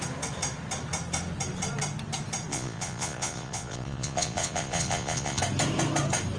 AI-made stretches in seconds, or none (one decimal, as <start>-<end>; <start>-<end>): 2.5-5.4